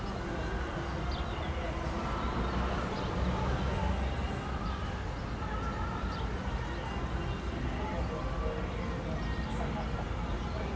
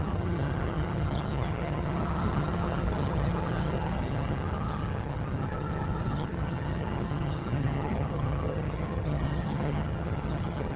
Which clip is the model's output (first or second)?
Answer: second